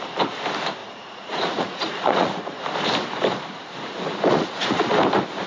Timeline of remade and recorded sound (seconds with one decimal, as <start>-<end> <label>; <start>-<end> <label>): 0.0-0.8 recorded; 0.8-2.6 remade; 2.6-4.3 recorded; 4.3-4.9 remade; 4.9-5.5 recorded